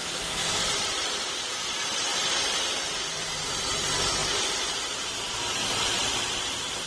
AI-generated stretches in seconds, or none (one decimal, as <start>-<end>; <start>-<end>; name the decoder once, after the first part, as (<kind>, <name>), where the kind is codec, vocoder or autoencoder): 0.0-0.6 (codec, SNAC)